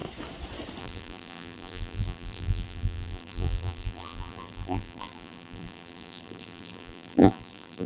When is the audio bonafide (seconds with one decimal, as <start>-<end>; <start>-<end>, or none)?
0.0-0.8